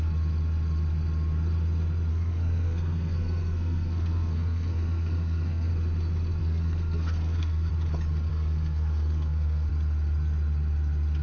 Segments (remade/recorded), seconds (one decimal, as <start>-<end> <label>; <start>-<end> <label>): 0.0-2.1 recorded; 2.1-5.7 remade; 5.7-6.4 recorded; 6.4-7.7 remade; 7.7-8.3 recorded; 8.3-9.7 remade; 9.7-11.2 recorded